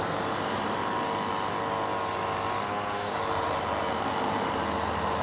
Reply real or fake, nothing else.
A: real